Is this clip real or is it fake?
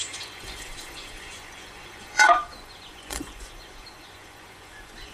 fake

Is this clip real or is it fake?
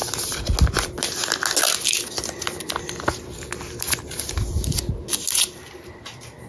real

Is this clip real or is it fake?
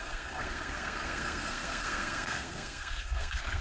fake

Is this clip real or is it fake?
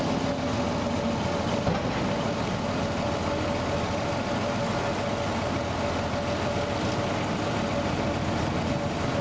real